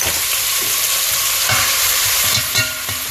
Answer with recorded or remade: remade